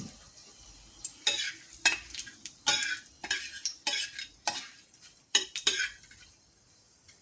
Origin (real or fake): fake